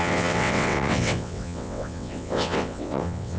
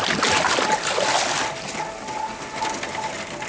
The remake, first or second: first